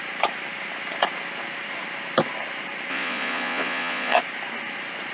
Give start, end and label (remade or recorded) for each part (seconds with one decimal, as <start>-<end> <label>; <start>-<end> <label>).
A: 0.0-2.9 recorded; 2.9-4.2 remade; 4.2-5.1 recorded